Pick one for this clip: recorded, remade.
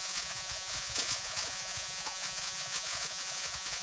remade